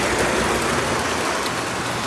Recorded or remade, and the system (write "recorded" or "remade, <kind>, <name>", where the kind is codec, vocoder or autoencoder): recorded